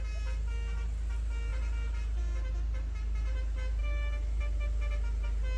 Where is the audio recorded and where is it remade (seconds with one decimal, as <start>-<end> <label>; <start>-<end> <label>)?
0.0-3.8 recorded; 3.8-4.4 remade; 4.4-5.6 recorded